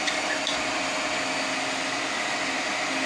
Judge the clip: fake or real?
real